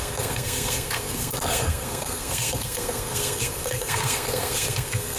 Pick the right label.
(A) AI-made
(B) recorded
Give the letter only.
A